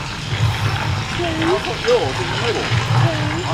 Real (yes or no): yes